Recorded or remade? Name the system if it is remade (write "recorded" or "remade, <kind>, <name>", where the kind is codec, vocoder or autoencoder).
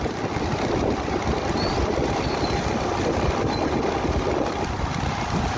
remade, vocoder, BigVGAN v2